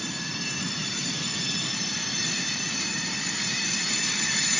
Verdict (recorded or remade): remade